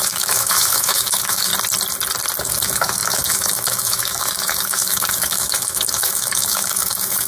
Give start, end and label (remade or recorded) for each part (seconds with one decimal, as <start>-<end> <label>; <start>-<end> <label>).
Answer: 0.0-1.5 remade; 1.5-2.4 recorded; 2.4-7.3 remade